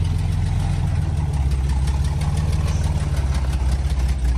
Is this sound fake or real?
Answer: real